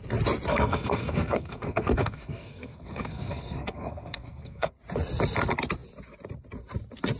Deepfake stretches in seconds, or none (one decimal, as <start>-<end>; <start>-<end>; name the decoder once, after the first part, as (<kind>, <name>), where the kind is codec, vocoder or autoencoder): 0.5-4.7 (codec, SNAC)